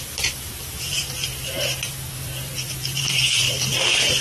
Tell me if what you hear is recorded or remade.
remade